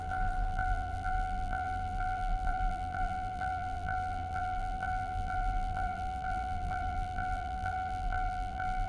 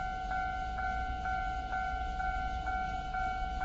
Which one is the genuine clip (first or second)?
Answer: second